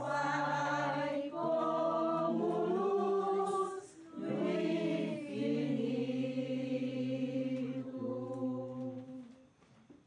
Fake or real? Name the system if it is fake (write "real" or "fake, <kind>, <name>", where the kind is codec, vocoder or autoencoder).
real